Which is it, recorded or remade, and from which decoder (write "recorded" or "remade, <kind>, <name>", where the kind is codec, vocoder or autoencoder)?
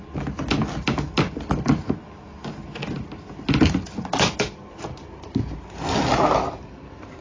recorded